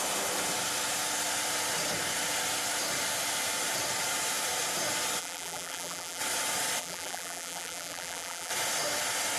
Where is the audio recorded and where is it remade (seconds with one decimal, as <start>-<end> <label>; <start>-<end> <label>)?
0.0-5.2 recorded; 5.2-6.2 remade; 6.2-6.8 recorded; 6.8-8.5 remade; 8.5-9.4 recorded